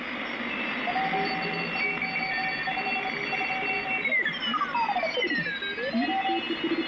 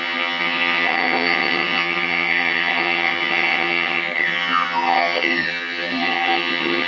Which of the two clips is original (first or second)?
first